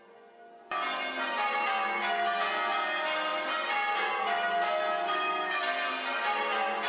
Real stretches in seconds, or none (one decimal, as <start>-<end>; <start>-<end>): 0.0-6.9